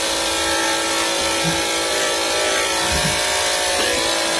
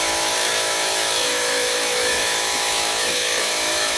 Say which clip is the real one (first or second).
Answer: first